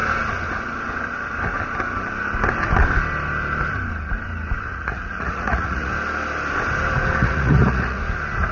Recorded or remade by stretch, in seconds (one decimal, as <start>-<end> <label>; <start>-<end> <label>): 0.0-4.7 recorded; 4.7-5.9 remade; 5.9-7.2 recorded; 7.2-8.0 remade; 8.0-8.5 recorded